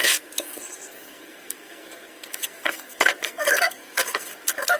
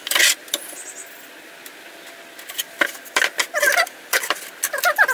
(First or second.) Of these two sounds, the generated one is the first